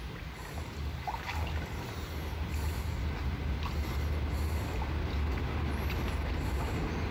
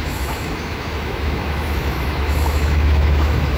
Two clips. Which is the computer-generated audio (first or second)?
second